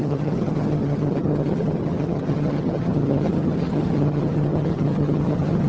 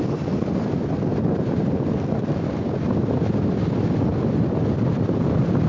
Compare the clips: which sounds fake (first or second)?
first